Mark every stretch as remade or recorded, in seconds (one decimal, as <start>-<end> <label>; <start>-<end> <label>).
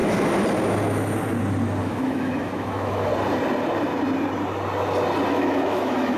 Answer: 0.0-1.8 recorded; 1.8-3.1 remade; 3.1-5.3 recorded; 5.3-6.2 remade